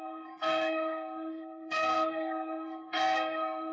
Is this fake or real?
fake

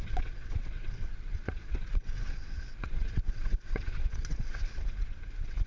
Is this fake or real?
fake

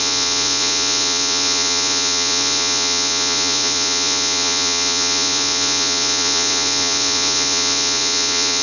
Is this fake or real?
fake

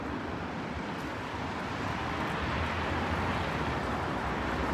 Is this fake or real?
real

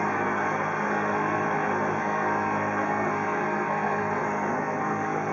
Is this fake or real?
fake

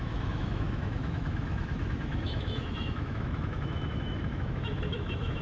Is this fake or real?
fake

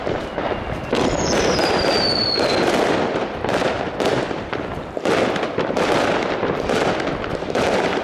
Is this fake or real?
real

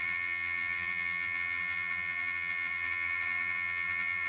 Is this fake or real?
fake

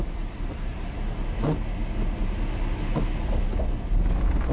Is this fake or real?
real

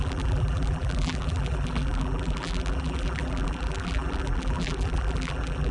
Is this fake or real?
fake